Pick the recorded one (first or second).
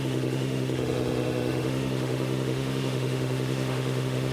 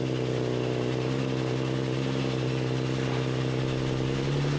second